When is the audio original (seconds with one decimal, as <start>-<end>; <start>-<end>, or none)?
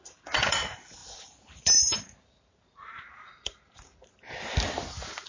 0.0-1.0; 4.2-5.3